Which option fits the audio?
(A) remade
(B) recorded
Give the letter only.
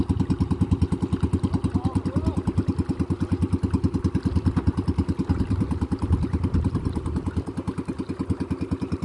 B